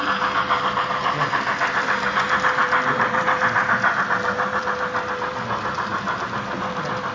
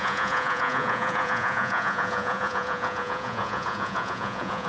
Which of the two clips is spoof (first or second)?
second